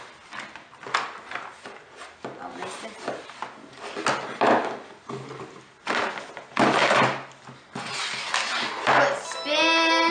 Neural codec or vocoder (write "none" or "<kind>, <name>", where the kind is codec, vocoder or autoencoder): none